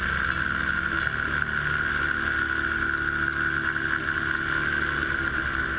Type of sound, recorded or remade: recorded